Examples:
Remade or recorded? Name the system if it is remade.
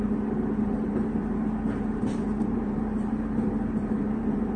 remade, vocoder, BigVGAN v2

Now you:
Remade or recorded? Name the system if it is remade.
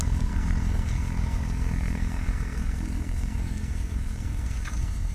remade, codec, SNAC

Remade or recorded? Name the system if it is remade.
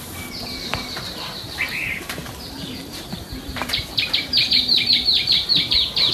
remade, vocoder, BigVGAN v2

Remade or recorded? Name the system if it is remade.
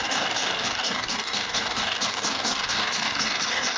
remade, codec, DAC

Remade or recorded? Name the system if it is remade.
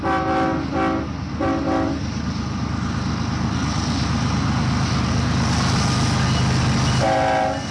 recorded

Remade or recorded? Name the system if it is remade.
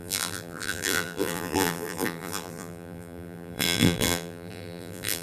remade, vocoder, BigVGAN v2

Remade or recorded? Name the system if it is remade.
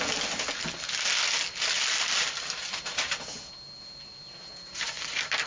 recorded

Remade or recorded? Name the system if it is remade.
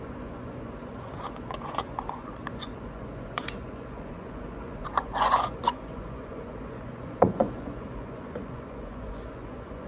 remade, vocoder, Vocos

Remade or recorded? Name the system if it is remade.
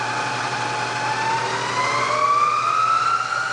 recorded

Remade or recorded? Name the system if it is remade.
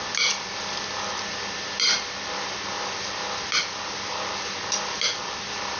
recorded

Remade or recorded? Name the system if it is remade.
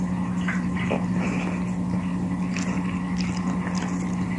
recorded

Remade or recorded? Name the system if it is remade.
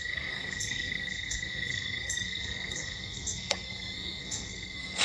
remade, codec, SNAC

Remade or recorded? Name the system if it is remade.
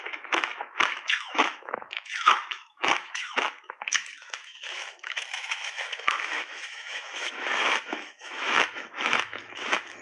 remade, autoencoder, DAC-VAE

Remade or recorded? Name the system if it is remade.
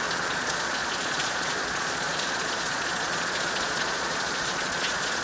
remade, vocoder, Vocos